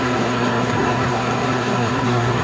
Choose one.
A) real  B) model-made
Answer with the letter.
B